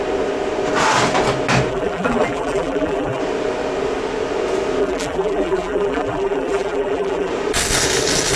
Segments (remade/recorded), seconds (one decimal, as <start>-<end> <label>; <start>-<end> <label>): 0.0-1.7 recorded; 1.7-3.2 remade; 3.2-4.8 recorded; 4.8-7.3 remade; 7.3-8.4 recorded